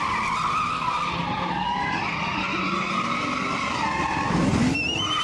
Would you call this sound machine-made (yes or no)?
no